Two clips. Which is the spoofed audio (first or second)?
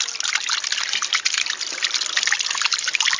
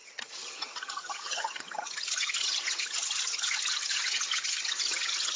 second